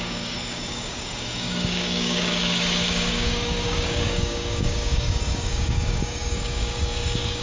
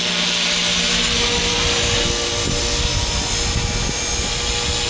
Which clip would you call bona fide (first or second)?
second